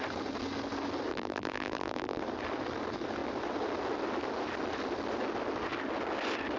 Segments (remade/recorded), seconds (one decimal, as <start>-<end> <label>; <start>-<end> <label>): 0.0-1.1 recorded; 1.1-2.2 remade; 2.2-6.6 recorded